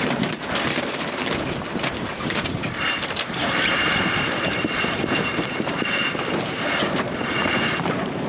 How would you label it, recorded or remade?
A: remade